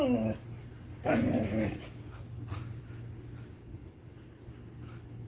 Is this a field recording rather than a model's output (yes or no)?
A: yes